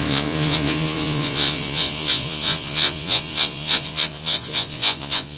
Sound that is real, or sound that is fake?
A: fake